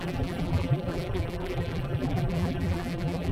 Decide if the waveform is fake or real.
fake